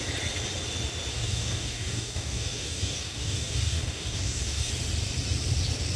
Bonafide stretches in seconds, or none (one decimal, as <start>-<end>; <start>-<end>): 0.0-1.1; 4.7-6.0